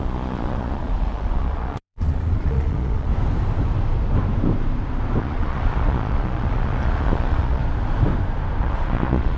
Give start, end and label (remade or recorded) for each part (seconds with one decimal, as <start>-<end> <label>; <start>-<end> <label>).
0.0-3.1 remade; 3.1-5.2 recorded; 5.2-7.6 remade; 7.6-8.6 recorded; 8.6-9.4 remade